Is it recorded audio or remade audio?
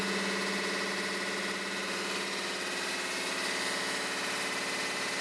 recorded